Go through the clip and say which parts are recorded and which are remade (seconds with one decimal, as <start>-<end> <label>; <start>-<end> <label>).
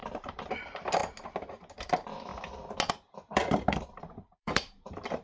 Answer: 0.0-1.0 remade; 1.0-1.7 recorded; 1.7-2.3 remade; 2.3-2.9 recorded; 2.9-5.2 remade